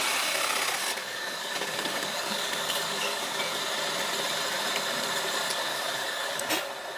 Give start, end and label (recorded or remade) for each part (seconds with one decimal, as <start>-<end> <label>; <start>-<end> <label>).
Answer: 0.0-1.0 recorded; 1.0-3.6 remade; 3.6-5.7 recorded; 5.7-6.4 remade; 6.4-7.0 recorded